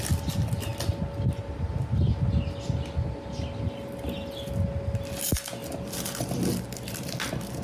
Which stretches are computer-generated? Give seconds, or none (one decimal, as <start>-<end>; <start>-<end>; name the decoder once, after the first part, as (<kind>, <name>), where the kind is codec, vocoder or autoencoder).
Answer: none